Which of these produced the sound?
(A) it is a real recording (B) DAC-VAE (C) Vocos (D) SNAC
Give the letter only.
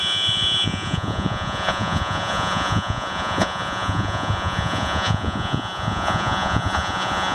C